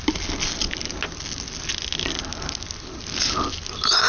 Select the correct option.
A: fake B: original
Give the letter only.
B